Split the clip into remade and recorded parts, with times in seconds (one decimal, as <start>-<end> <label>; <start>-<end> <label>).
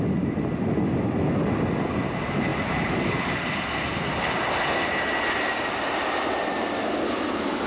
0.0-7.7 recorded